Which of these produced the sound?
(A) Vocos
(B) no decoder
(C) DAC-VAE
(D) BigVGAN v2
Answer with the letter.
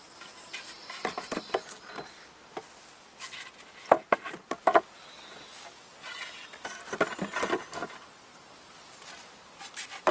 B